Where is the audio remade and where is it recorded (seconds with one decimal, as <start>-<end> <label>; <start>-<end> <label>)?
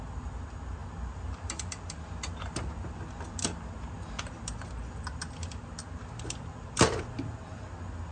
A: 0.0-8.1 recorded